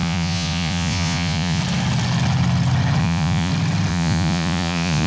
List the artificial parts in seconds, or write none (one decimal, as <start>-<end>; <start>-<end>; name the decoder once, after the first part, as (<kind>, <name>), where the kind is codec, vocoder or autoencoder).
0.0-1.6 (vocoder, Vocos); 3.0-3.5; 3.9-5.1